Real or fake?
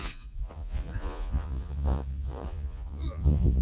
fake